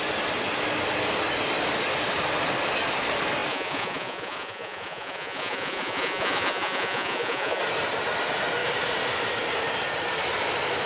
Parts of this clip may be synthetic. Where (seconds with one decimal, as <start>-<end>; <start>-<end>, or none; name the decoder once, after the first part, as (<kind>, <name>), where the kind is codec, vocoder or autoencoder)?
3.5-7.6 (vocoder, Vocos)

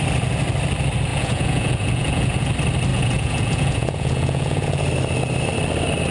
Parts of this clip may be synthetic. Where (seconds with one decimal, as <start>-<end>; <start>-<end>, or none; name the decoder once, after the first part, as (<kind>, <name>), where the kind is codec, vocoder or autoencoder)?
1.1-2.5 (vocoder, Vocos); 2.9-4.8

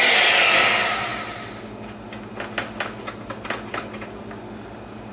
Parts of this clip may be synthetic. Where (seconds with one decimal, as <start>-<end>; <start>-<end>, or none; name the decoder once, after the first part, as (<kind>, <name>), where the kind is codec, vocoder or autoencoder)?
none

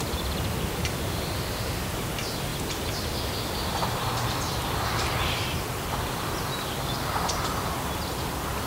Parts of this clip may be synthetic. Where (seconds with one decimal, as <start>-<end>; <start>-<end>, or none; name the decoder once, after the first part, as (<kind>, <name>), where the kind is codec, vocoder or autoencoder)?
0.8-2.1 (vocoder, BigVGAN v2)

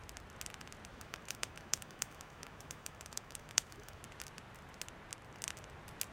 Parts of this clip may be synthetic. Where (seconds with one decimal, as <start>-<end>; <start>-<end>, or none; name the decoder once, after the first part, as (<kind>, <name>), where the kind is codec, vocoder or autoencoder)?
0.9-4.0 (autoencoder, DAC-VAE)

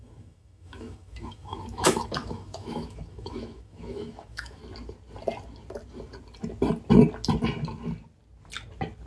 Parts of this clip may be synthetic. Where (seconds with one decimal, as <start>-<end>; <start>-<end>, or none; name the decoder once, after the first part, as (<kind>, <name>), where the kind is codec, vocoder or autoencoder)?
0.0-4.6 (autoencoder, DAC-VAE)

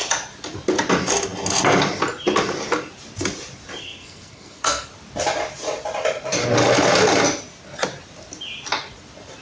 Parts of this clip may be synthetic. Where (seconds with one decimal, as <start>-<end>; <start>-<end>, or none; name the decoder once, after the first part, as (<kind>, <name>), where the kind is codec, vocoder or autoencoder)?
3.8-4.9 (codec, SNAC)

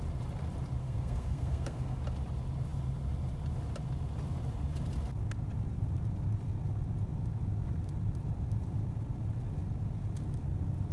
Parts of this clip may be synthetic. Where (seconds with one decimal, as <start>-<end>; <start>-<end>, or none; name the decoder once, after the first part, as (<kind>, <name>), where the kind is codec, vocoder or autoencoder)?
0.8-2.0 (codec, SNAC)